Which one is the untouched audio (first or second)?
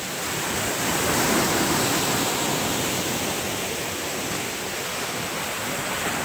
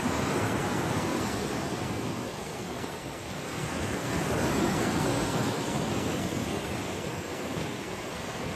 first